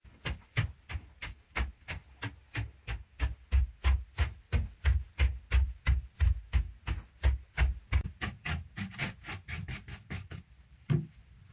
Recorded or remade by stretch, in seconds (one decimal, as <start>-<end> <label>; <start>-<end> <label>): 0.0-11.5 recorded